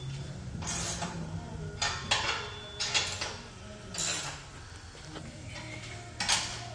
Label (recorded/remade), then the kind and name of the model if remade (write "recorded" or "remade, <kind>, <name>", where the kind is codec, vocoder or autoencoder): recorded